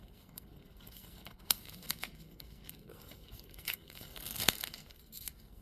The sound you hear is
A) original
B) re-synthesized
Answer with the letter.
B